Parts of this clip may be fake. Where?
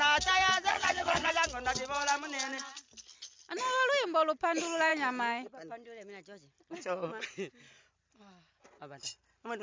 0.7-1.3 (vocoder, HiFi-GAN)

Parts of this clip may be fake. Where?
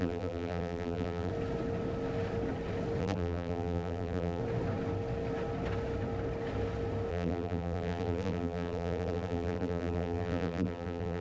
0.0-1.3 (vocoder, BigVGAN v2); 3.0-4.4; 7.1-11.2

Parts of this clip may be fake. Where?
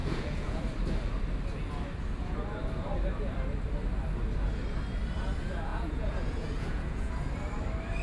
0.0-0.6 (vocoder, Vocos); 5.7-7.1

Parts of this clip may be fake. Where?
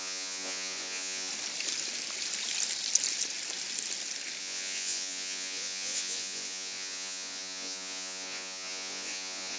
0.0-1.3 (vocoder, Vocos); 4.4-9.6